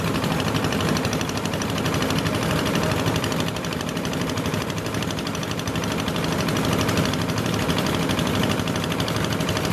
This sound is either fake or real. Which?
real